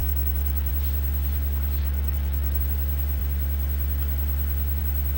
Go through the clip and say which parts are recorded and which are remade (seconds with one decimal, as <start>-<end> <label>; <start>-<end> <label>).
0.0-0.7 remade; 0.7-1.8 recorded; 1.8-2.6 remade; 2.6-5.2 recorded